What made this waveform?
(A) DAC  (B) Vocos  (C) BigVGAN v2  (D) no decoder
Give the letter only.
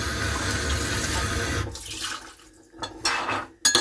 D